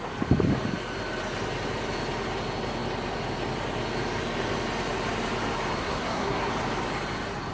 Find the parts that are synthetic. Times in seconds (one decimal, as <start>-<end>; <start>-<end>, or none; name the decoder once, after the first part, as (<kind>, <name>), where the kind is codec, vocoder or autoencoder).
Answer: 5.8-6.5 (codec, SNAC)